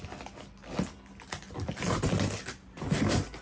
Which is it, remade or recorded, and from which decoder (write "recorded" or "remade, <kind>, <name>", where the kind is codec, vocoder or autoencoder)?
recorded